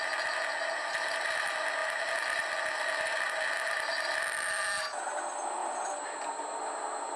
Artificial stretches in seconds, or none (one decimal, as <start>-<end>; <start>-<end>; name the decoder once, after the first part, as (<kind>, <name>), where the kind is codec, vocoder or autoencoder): none